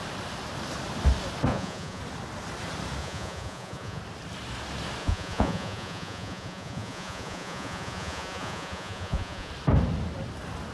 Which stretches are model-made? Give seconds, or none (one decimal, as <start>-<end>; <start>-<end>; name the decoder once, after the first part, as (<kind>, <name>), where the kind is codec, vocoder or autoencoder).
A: 1.5-2.0 (vocoder, Vocos); 3.0-4.0; 5.0-9.5